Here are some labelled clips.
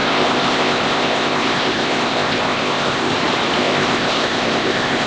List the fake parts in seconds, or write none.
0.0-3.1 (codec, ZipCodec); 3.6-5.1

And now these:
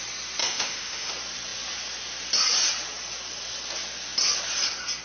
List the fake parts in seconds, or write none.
0.4-1.1 (autoencoder, DAC-VAE)

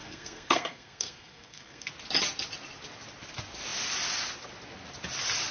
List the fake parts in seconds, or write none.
0.0-1.9 (codec, SNAC)

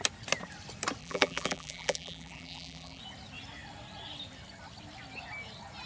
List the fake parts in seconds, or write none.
1.0-3.0 (vocoder, BigVGAN v2)

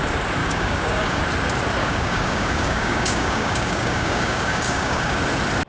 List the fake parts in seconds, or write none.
0.4-1.2 (codec, DAC); 1.8-5.2

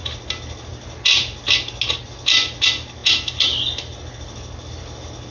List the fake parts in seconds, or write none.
none

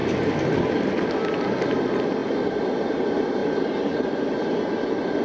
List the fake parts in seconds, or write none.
none

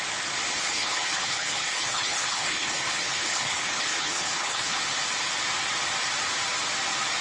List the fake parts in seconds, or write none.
0.5-4.8 (codec, HILCodec)